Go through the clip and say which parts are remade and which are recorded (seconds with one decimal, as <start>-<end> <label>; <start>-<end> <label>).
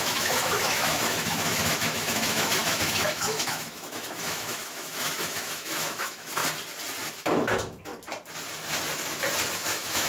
0.0-6.4 remade; 6.4-7.1 recorded; 7.1-7.9 remade; 7.9-9.5 recorded; 9.5-10.1 remade